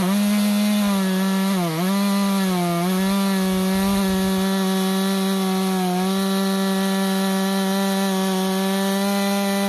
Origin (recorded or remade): recorded